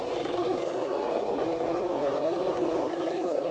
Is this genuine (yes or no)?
no